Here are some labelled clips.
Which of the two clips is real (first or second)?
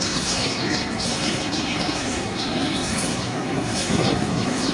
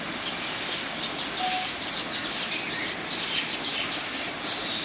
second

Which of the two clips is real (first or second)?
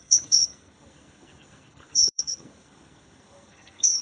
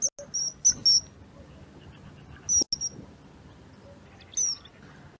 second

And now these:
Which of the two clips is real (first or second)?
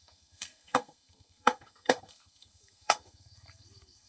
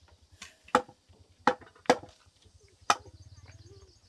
second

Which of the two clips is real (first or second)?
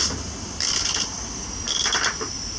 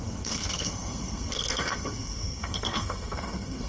first